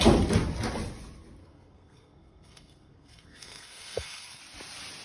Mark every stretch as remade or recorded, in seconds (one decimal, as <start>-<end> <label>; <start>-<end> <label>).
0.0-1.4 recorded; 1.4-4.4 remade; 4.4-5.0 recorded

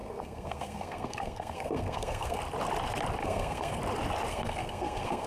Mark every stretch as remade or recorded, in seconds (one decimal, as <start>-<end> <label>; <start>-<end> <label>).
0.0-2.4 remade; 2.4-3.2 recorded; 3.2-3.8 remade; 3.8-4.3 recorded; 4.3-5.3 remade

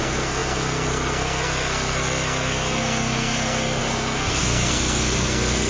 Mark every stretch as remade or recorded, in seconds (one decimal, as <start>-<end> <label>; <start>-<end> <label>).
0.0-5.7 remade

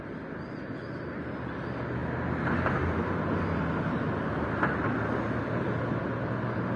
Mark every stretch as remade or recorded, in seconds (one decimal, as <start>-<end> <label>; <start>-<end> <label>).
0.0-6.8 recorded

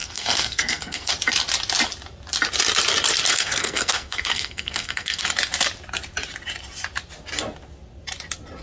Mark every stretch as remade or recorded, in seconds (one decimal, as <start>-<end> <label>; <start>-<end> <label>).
0.0-1.1 remade; 1.1-3.3 recorded; 3.3-5.2 remade; 5.2-8.6 recorded